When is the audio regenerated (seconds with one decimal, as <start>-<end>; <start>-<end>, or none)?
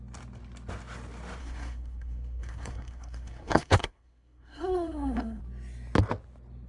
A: 1.4-5.4